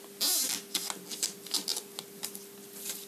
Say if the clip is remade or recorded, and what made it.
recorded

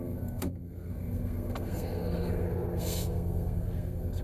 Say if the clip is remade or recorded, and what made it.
remade, codec, SNAC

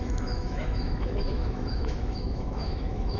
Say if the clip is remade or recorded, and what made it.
remade, autoencoder, DAC-VAE